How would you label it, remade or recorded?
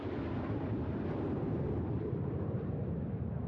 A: recorded